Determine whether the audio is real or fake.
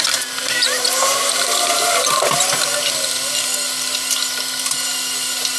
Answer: real